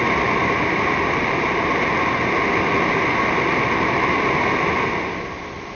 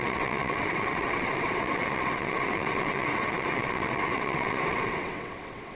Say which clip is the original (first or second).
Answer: first